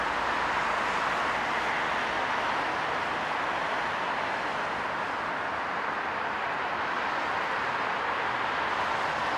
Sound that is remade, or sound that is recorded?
recorded